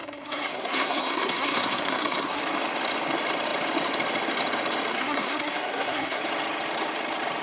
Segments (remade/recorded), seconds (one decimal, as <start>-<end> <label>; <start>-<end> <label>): 0.0-2.4 remade; 2.4-4.9 recorded; 4.9-6.2 remade; 6.2-7.4 recorded